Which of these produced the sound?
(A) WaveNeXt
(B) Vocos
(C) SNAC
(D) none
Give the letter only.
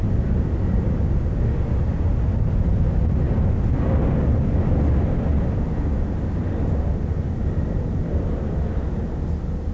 D